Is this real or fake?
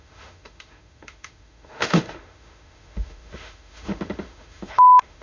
fake